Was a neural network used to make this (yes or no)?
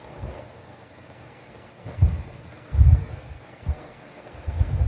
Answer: yes